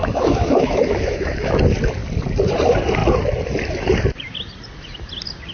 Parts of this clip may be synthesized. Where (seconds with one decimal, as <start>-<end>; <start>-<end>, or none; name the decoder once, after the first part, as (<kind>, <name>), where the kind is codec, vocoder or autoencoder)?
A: 0.0-1.5 (autoencoder, DAC-VAE)